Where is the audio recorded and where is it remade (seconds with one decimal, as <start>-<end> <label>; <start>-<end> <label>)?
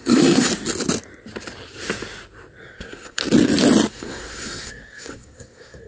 0.0-0.5 remade; 0.5-2.6 recorded; 2.6-3.2 remade; 3.2-3.9 recorded; 3.9-5.9 remade